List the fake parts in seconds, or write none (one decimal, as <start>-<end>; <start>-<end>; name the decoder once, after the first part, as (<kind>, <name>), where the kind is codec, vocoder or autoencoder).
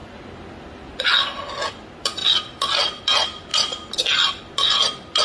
none